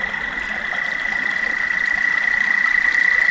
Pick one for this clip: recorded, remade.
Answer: recorded